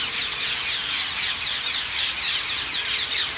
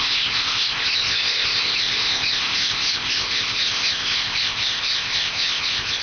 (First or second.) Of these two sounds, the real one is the first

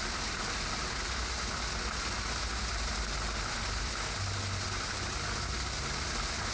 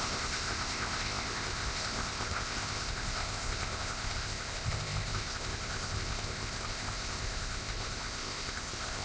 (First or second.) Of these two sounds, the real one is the first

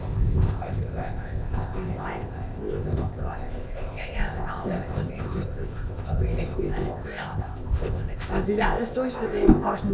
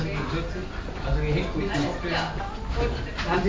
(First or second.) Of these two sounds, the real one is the second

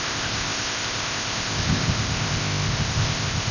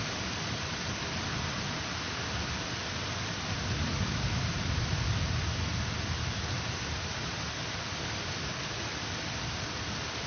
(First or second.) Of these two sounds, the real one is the second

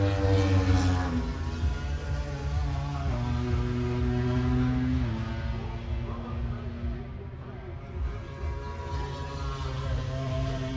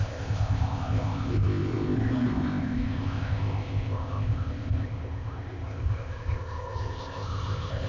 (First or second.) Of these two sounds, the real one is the first